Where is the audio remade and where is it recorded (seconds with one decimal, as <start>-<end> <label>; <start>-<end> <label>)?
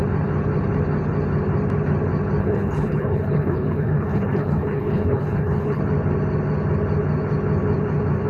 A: 0.0-2.4 recorded; 2.4-5.8 remade; 5.8-8.3 recorded